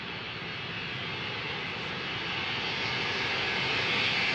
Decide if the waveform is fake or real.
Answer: real